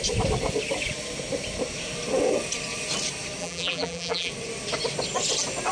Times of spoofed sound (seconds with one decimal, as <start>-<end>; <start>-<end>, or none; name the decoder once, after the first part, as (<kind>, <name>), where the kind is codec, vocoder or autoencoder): 3.4-4.3 (vocoder, BigVGAN v2)